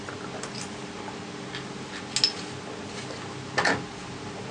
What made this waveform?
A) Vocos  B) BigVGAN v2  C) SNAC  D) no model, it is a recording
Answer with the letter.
D